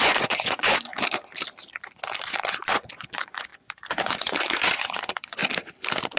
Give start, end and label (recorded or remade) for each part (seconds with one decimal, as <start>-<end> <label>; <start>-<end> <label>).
0.0-0.9 remade; 0.9-2.2 recorded; 2.2-5.4 remade; 5.4-6.2 recorded